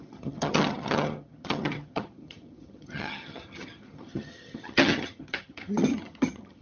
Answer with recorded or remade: remade